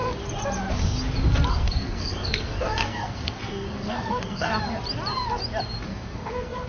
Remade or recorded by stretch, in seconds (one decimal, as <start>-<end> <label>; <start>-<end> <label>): 0.0-1.5 recorded; 1.5-4.5 remade; 4.5-5.9 recorded; 5.9-6.7 remade